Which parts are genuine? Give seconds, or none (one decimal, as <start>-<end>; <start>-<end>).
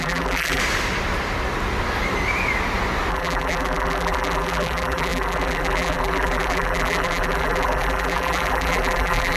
0.6-3.1